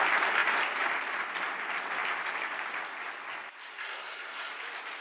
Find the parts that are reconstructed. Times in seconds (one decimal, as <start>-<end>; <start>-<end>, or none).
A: 3.7-4.5

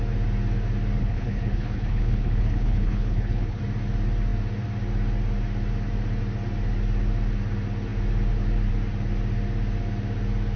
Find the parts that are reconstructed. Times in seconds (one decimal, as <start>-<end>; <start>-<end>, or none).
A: 1.0-3.6

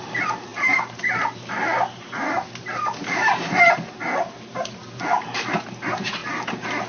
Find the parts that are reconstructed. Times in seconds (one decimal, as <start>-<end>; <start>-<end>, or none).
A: 0.0-6.2

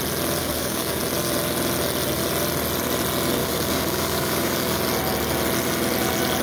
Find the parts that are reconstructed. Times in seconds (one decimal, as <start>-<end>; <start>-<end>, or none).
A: 0.4-1.0; 3.4-4.8

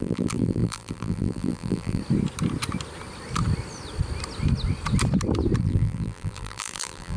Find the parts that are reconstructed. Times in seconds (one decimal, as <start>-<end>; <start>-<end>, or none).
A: 0.0-2.0; 5.6-7.2